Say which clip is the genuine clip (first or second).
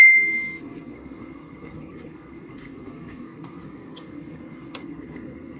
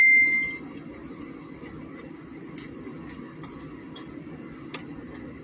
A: second